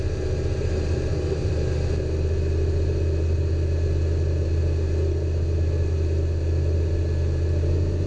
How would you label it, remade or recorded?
recorded